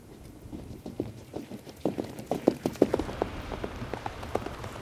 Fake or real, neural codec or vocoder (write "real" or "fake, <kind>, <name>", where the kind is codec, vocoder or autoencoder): fake, vocoder, BigVGAN v2